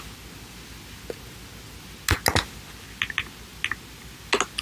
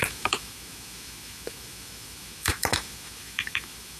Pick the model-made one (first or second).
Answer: second